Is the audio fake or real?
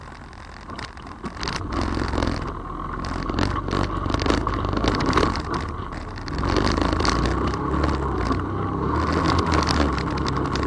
real